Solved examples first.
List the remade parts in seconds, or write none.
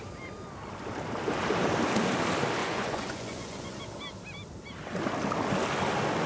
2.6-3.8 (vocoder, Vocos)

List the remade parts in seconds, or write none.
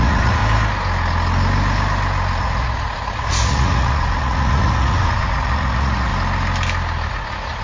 0.0-0.4 (vocoder, Vocos); 2.4-6.1; 7.1-7.6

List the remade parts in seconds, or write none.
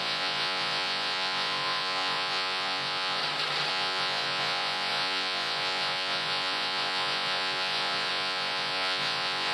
0.0-3.2 (vocoder, Vocos); 3.7-9.5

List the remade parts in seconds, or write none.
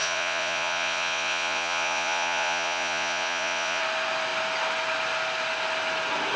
0.0-3.8 (vocoder, Vocos)